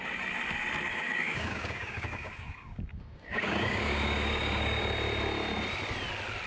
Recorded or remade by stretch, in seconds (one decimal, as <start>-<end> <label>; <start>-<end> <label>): 0.0-0.9 recorded; 0.9-4.8 remade; 4.8-6.5 recorded